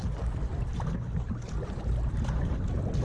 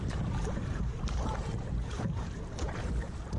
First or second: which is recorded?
first